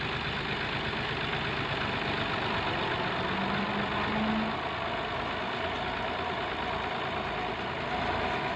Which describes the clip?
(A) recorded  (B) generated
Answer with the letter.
A